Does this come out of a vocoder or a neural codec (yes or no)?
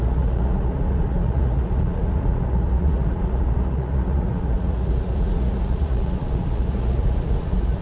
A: yes